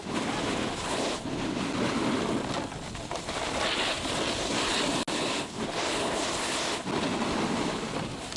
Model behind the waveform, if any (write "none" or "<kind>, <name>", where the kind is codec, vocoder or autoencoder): none